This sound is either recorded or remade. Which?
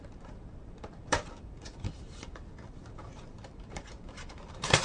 remade